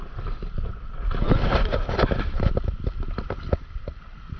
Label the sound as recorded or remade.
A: recorded